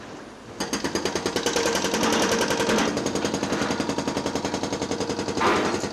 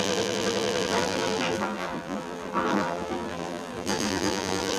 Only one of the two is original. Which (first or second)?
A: first